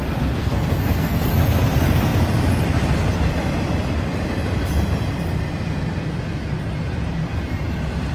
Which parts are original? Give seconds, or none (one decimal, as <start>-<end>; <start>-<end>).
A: 0.0-0.4; 1.3-8.1